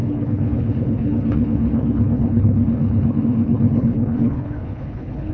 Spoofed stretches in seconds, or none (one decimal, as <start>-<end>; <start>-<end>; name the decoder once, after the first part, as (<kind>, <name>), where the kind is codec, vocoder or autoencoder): 0.0-5.3 (codec, HILCodec)